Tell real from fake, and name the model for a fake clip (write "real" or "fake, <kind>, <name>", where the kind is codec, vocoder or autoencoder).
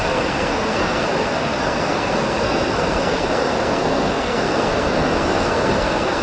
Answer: fake, codec, SNAC